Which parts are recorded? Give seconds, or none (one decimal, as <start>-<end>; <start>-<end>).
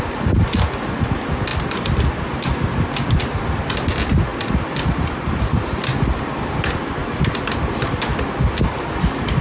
0.0-4.3; 5.5-9.4